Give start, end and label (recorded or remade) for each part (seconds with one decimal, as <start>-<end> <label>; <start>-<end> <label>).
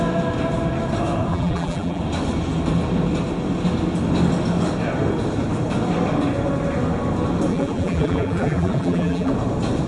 0.0-1.3 recorded; 1.3-2.0 remade; 2.0-7.5 recorded; 7.5-9.3 remade; 9.3-9.9 recorded